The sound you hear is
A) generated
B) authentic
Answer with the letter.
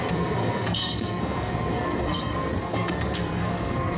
A